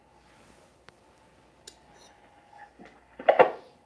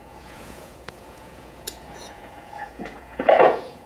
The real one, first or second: first